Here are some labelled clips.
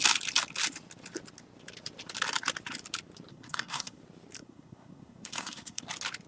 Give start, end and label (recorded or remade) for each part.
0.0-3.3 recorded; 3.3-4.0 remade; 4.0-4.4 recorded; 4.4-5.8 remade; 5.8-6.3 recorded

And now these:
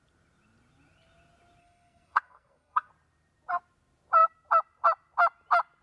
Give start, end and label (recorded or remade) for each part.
0.0-1.6 recorded; 1.6-2.9 remade; 2.9-5.8 recorded

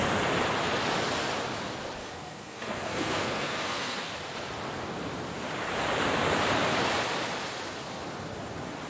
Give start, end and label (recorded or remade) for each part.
0.0-2.0 recorded; 2.0-4.1 remade; 4.1-8.9 recorded

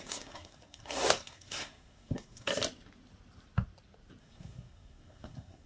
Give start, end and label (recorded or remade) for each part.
0.0-2.5 remade; 2.5-4.2 recorded; 4.2-5.7 remade